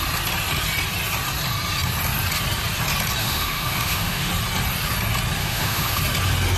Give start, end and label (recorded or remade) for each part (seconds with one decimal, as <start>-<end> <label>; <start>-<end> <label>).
0.0-3.2 recorded; 3.2-4.3 remade; 4.3-5.4 recorded; 5.4-6.0 remade; 6.0-6.6 recorded

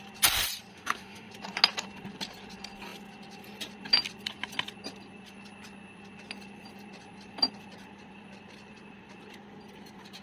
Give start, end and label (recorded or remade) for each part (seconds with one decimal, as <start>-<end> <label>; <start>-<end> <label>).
0.0-0.7 recorded; 0.7-1.3 remade; 1.3-10.2 recorded

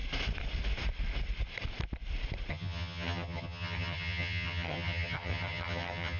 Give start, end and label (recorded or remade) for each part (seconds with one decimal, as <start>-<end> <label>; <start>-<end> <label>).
0.0-2.5 recorded; 2.5-6.2 remade